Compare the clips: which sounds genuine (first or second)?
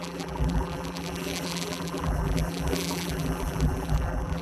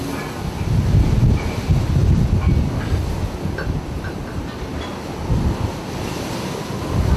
second